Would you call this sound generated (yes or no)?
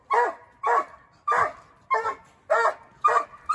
no